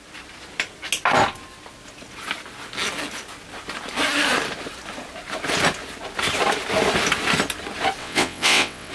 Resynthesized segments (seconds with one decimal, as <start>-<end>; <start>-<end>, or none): 8.0-8.9